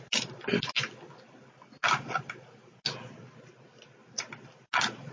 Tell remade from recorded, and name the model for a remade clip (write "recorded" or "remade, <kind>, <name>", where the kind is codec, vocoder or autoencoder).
recorded